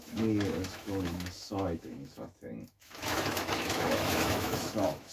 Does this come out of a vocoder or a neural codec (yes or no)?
yes